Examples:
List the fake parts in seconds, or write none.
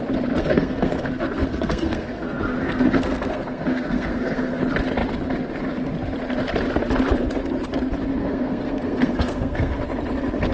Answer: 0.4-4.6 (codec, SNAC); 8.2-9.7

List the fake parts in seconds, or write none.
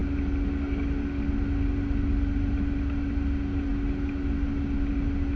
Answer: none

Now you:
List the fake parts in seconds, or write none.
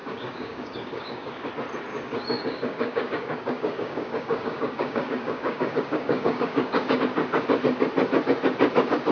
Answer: 0.0-1.5 (codec, DAC); 1.9-7.0